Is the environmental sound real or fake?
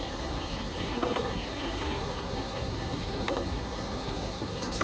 fake